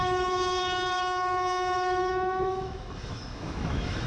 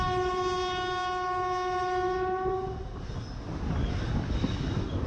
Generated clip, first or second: first